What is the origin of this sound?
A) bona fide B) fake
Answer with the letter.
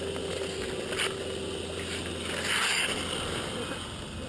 A